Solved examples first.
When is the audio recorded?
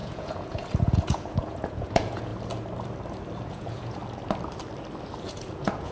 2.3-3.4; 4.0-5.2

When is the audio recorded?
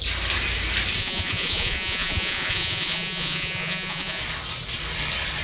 0.0-1.0; 4.2-5.4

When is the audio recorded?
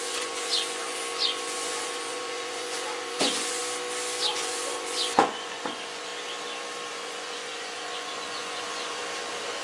3.6-4.3; 6.1-6.9; 9.0-9.6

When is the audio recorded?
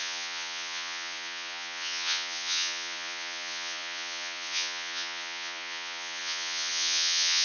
none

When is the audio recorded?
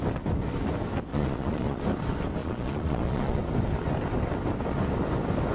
0.0-1.1; 1.8-2.4; 3.4-5.5